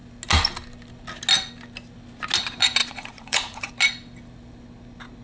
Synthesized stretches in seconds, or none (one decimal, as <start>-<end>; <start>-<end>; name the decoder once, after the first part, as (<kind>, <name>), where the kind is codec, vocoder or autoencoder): 2.8-3.7 (vocoder, Vocos)